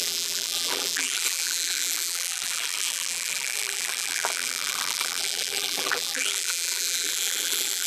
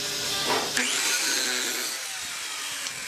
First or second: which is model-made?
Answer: first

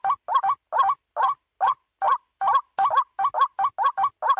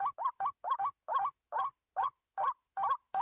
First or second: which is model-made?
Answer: second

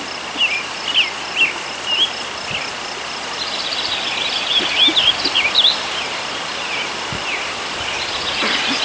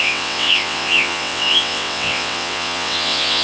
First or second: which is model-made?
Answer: second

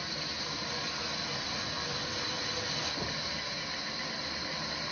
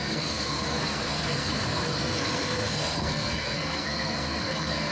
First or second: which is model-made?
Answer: second